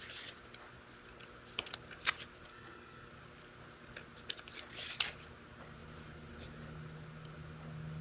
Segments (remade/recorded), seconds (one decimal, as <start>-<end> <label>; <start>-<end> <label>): 0.0-2.5 recorded; 2.5-3.1 remade; 3.1-8.0 recorded